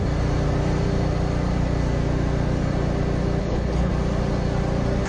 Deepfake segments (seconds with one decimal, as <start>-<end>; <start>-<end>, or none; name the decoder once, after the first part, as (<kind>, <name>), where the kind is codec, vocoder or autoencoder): 3.4-3.9 (codec, HILCodec)